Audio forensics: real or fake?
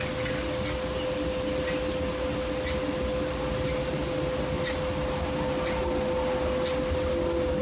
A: real